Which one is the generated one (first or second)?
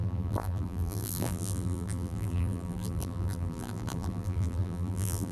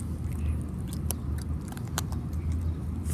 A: first